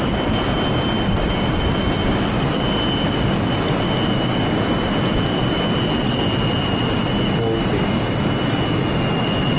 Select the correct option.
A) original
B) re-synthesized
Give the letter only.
A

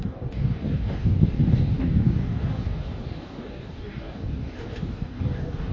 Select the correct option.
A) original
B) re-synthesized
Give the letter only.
B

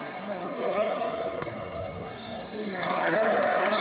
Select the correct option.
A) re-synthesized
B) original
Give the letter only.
A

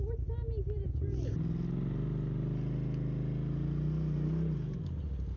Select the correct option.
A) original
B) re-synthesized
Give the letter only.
A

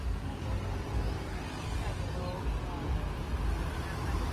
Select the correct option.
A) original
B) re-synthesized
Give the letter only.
A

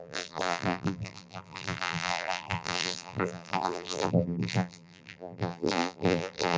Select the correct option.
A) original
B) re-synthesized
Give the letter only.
B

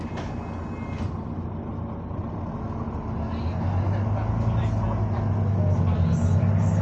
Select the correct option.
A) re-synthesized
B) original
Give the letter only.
B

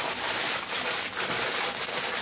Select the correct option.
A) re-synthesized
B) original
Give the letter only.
B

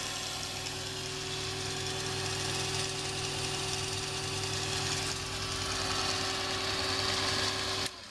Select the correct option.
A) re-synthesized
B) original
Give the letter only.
B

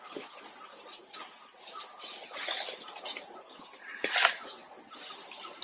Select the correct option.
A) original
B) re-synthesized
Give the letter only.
A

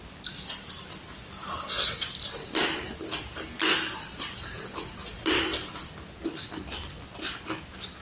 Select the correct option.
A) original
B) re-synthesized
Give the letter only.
A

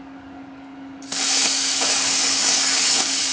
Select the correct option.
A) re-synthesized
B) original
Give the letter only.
A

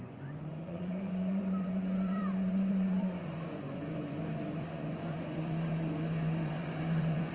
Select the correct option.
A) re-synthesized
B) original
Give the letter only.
A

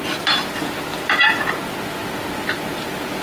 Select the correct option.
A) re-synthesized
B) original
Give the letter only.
B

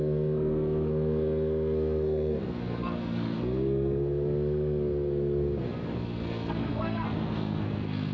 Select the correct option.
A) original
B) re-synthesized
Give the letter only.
B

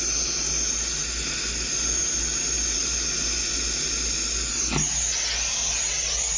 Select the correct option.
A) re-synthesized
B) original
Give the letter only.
B